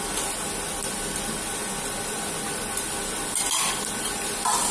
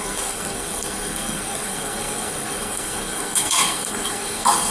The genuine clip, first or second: first